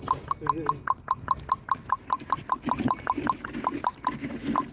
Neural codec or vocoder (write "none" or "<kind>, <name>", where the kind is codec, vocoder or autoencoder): none